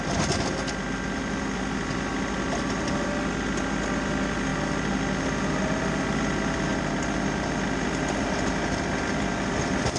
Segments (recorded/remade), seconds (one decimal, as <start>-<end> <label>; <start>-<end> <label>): 0.0-10.0 recorded